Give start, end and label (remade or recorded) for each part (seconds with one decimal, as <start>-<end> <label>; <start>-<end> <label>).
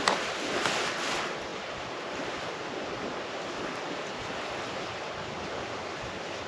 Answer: 0.0-1.5 recorded; 1.5-5.4 remade; 5.4-6.5 recorded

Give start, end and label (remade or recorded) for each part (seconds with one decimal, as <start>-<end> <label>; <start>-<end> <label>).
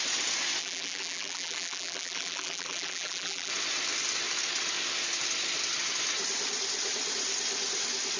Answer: 0.0-0.6 recorded; 0.6-3.5 remade; 3.5-8.2 recorded